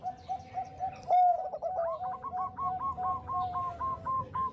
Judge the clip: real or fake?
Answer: real